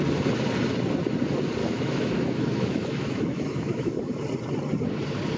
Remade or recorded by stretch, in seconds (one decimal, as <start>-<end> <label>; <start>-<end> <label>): 0.0-1.6 recorded; 1.6-4.2 remade; 4.2-5.4 recorded